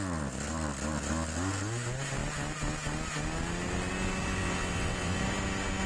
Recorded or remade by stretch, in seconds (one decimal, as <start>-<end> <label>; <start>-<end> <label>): 0.0-4.4 recorded; 4.4-5.2 remade; 5.2-5.9 recorded